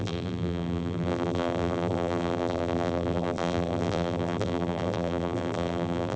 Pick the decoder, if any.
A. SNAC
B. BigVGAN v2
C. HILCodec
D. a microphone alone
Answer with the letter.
B